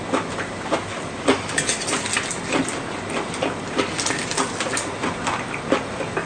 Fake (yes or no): no